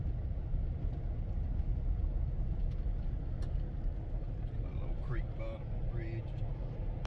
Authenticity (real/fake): real